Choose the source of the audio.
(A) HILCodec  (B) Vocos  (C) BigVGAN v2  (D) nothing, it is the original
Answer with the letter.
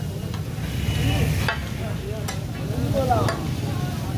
D